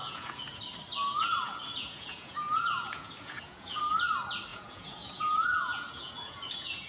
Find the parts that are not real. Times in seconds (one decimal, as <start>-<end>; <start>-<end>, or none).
0.0-0.6; 1.1-3.8; 4.5-6.9